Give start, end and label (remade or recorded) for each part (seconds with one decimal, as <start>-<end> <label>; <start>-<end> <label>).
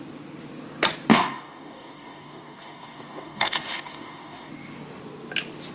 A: 0.0-1.1 recorded; 1.1-4.5 remade; 4.5-5.7 recorded